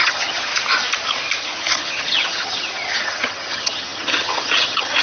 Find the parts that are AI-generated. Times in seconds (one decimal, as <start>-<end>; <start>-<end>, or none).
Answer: 0.0-0.5; 1.4-5.0